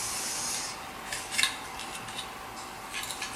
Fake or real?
real